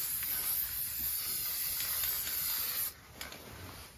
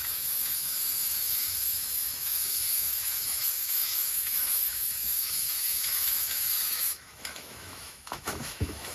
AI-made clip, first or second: second